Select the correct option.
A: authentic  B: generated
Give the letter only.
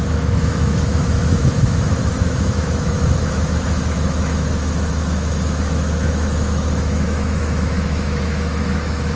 B